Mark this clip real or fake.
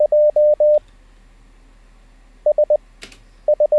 real